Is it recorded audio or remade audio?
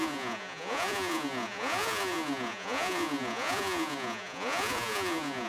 remade